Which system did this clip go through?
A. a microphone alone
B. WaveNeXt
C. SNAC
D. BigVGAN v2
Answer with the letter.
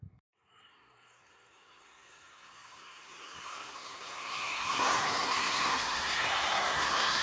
C